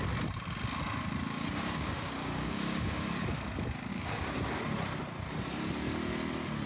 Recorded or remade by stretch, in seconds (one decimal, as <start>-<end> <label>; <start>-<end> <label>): 0.0-1.2 recorded; 1.2-3.2 remade; 3.2-3.9 recorded; 3.9-4.6 remade; 4.6-6.7 recorded